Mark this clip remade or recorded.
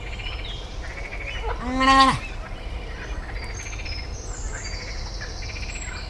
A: recorded